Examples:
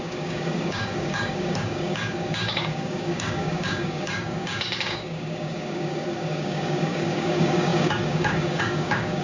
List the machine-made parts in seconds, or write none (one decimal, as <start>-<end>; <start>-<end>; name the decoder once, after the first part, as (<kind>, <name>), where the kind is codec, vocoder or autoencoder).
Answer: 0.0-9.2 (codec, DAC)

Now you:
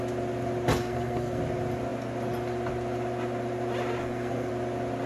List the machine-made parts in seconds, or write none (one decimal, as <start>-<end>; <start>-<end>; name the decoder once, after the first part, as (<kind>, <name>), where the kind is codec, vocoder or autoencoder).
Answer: 0.8-1.4 (codec, SNAC); 4.0-4.5

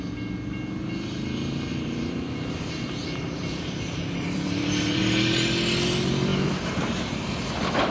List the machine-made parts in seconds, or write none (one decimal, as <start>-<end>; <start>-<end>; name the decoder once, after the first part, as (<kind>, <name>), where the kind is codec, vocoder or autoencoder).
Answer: 1.7-5.0 (vocoder, BigVGAN v2); 6.3-7.1